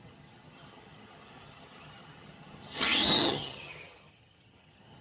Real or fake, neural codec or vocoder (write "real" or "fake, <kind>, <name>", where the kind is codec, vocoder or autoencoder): fake, vocoder, HiFi-GAN